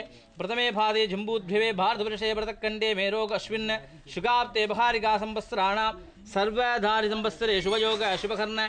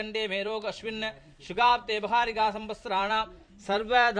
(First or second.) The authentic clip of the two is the first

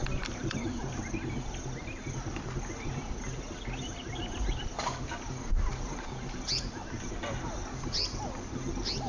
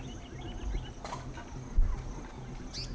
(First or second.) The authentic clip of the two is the second